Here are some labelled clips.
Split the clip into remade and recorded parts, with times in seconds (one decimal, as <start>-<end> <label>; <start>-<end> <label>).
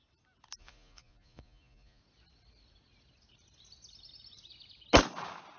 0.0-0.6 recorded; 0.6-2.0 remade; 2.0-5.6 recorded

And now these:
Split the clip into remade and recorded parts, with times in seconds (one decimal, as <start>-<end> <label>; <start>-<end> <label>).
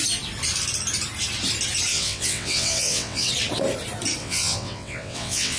0.0-1.9 recorded; 1.9-3.3 remade; 3.3-4.2 recorded; 4.2-5.6 remade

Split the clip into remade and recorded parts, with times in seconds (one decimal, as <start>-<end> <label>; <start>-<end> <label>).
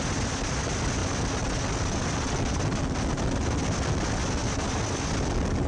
0.0-5.7 recorded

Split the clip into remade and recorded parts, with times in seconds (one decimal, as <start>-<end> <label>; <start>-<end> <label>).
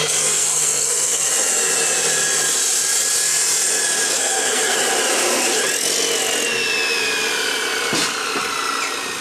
0.0-1.3 remade; 1.3-4.1 recorded; 4.1-4.8 remade; 4.8-9.2 recorded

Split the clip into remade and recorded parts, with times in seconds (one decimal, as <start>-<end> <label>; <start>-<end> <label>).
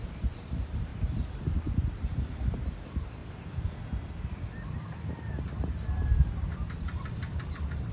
0.0-0.9 remade; 0.9-1.5 recorded; 1.5-2.1 remade; 2.1-2.8 recorded; 2.8-3.2 remade; 3.2-4.6 recorded; 4.6-7.9 remade